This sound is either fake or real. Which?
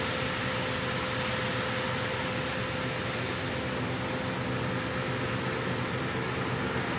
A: real